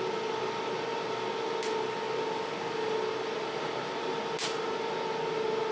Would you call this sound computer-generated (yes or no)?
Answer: no